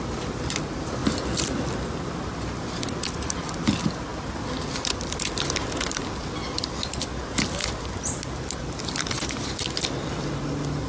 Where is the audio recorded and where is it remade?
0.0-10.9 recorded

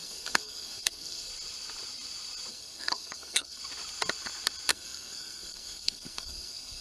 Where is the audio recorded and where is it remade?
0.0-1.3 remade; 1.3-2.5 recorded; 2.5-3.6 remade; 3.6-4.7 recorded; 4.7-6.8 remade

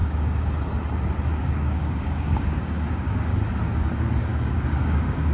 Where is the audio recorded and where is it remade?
0.0-0.5 remade; 0.5-1.3 recorded; 1.3-3.3 remade; 3.3-4.3 recorded; 4.3-5.3 remade

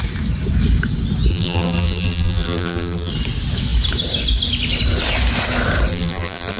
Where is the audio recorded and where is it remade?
0.0-1.3 recorded; 1.3-3.1 remade; 3.1-5.9 recorded; 5.9-6.6 remade

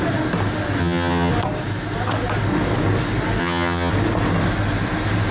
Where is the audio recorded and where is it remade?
0.0-0.8 recorded; 0.8-1.3 remade; 1.3-3.4 recorded; 3.4-3.9 remade; 3.9-5.3 recorded

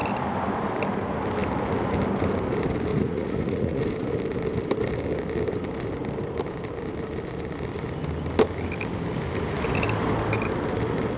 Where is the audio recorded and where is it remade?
0.0-2.9 recorded; 2.9-3.8 remade; 3.8-11.2 recorded

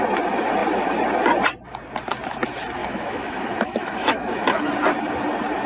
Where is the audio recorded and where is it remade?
0.0-2.8 recorded; 2.8-4.7 remade; 4.7-5.7 recorded

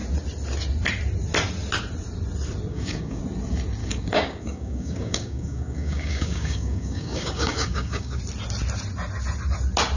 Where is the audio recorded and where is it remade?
0.0-2.7 recorded; 2.7-3.2 remade; 3.2-3.8 recorded; 3.8-8.2 remade; 8.2-10.0 recorded